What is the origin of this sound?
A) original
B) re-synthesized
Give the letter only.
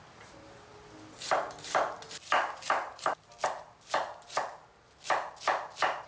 A